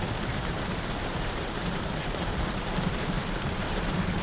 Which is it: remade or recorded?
remade